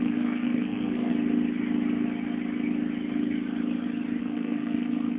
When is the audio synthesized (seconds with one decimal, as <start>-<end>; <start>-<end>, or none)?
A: 0.0-1.1; 4.2-5.2